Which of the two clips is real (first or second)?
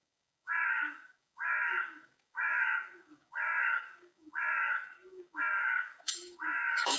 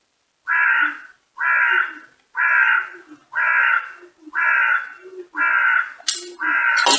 second